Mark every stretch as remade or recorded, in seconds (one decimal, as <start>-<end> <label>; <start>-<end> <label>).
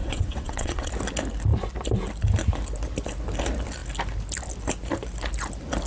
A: 0.0-0.9 remade; 0.9-5.9 recorded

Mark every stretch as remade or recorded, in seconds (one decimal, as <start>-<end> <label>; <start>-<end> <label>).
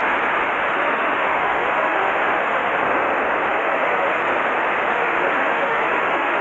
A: 0.0-0.7 recorded; 0.7-2.8 remade; 2.8-3.5 recorded; 3.5-4.2 remade; 4.2-4.9 recorded; 4.9-6.4 remade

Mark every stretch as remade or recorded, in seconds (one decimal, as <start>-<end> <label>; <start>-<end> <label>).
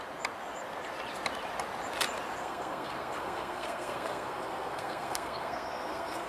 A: 0.0-2.4 recorded; 2.4-6.3 remade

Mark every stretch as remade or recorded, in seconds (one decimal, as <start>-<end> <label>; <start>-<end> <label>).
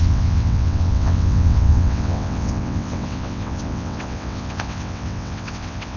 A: 0.0-6.0 remade